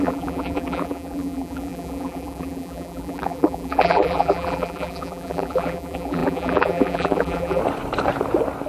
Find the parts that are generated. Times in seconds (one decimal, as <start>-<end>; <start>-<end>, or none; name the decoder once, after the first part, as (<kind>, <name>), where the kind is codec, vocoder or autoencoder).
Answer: 0.0-7.6 (vocoder, BigVGAN v2)